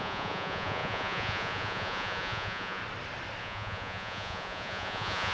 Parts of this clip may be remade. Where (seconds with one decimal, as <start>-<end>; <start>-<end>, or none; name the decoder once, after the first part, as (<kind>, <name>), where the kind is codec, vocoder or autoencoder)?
0.0-2.8 (vocoder, Vocos); 3.4-5.3